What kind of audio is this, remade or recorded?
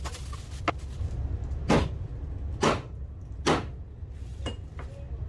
recorded